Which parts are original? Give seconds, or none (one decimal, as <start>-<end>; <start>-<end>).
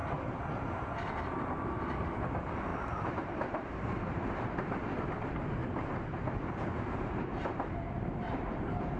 0.0-2.7; 4.5-5.6